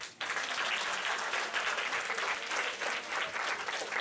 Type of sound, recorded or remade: recorded